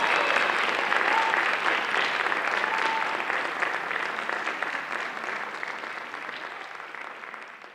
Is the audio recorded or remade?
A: recorded